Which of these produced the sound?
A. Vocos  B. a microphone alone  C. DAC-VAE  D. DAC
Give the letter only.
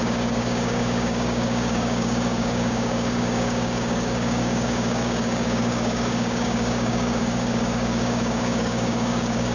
D